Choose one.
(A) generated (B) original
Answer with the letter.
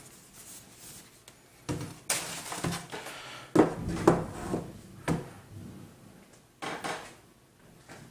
B